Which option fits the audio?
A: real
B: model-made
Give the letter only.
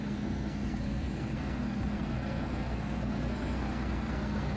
B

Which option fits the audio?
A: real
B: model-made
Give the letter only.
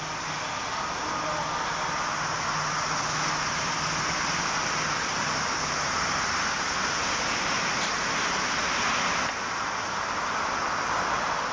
A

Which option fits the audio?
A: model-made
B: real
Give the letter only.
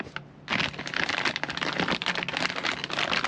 B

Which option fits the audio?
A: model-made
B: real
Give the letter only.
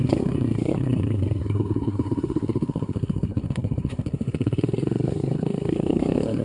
A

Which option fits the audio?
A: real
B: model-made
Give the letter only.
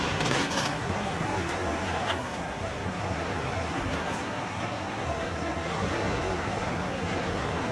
B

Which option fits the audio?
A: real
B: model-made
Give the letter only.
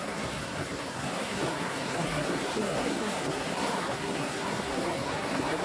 B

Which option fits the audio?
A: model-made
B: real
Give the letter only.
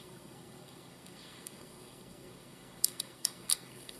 A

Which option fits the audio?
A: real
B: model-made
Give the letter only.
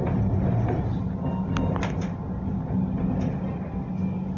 A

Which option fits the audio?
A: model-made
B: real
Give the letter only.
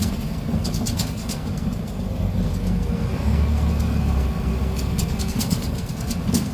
A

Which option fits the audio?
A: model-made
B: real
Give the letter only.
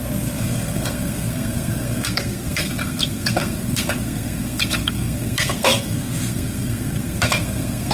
A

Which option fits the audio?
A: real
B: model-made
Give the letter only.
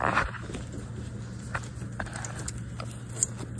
A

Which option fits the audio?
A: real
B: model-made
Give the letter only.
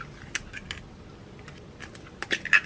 A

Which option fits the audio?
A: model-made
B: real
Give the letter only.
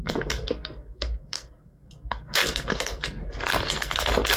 A